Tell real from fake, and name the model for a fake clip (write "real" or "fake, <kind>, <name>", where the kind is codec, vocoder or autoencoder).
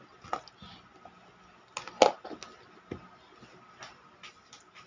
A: real